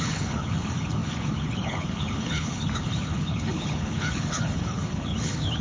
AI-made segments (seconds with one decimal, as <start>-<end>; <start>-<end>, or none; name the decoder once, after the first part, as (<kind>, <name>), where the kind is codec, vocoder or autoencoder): 0.0-5.6 (codec, HILCodec)